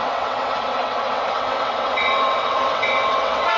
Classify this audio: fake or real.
fake